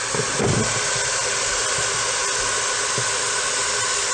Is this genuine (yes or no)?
yes